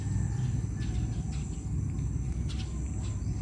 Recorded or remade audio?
recorded